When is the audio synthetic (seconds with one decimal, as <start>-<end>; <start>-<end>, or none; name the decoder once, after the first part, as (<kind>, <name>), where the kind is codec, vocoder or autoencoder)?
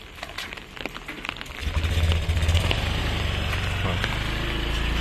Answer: none